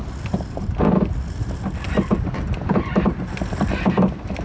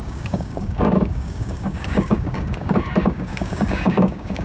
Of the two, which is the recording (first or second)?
first